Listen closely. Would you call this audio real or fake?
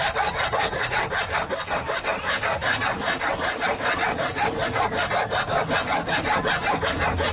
real